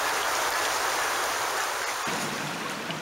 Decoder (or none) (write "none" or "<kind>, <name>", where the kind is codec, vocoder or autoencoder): none